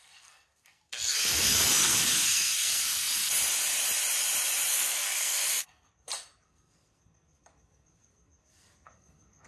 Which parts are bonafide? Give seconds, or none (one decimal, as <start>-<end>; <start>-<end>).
3.2-4.7

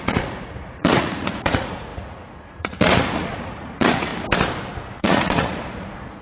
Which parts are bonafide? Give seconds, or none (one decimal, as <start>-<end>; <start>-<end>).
4.1-4.6